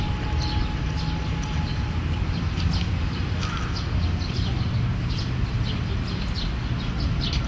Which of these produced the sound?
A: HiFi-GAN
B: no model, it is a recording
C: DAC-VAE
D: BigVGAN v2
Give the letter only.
B